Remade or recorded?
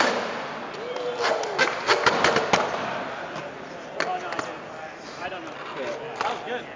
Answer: recorded